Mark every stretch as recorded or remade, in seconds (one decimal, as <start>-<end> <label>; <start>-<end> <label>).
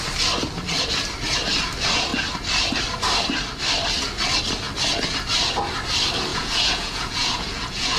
0.0-6.3 recorded; 6.3-8.0 remade